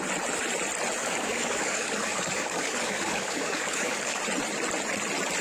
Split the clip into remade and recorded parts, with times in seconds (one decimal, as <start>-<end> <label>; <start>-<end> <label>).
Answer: 0.0-1.0 recorded; 1.0-4.2 remade; 4.2-5.4 recorded